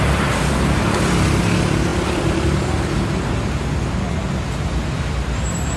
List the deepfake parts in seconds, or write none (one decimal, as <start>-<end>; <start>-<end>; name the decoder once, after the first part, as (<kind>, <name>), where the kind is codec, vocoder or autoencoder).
1.9-3.3 (vocoder, BigVGAN v2)